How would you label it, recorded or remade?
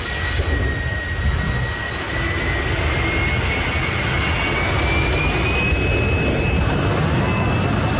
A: recorded